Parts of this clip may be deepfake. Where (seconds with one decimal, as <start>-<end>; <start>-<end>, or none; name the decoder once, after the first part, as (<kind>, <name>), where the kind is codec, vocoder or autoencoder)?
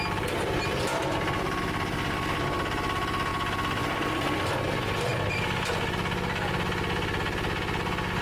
none